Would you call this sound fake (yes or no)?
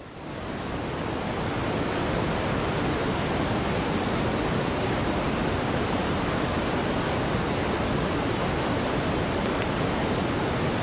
no